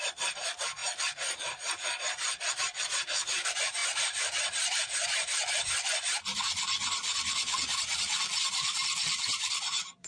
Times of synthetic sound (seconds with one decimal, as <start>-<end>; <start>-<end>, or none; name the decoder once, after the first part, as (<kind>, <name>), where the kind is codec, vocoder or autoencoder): 0.0-10.1 (vocoder, BigVGAN v2)